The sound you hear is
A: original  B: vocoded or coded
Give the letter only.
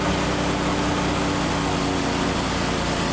A